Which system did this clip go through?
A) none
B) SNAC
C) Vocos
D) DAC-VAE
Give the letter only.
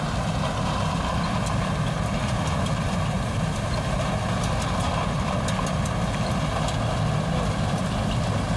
A